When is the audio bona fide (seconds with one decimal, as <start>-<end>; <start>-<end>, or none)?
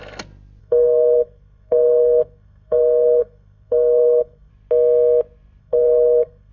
0.0-0.6; 4.5-5.6